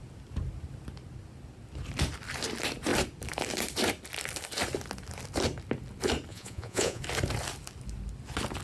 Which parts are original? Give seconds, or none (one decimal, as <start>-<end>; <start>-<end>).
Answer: 0.0-6.3; 7.0-8.6